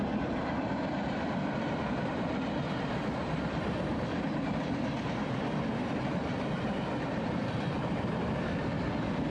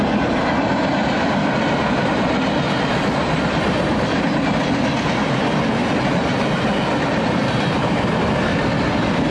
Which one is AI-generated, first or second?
first